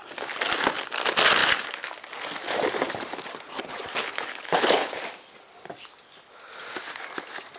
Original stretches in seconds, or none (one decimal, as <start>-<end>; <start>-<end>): 0.0-4.0; 5.0-7.6